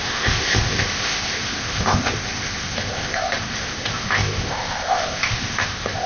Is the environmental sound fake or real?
fake